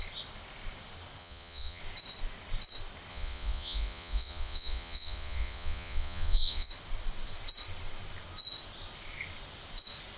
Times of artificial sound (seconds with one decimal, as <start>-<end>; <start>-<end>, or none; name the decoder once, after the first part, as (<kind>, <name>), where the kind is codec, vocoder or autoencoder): 1.2-1.8 (vocoder, Vocos); 3.1-6.7